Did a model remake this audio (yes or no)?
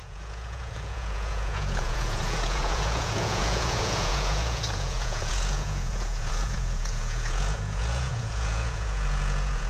yes